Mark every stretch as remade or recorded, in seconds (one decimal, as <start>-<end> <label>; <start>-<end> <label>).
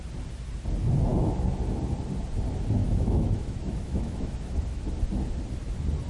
0.0-2.8 recorded; 2.8-4.9 remade; 4.9-6.1 recorded